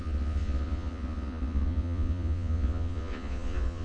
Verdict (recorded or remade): remade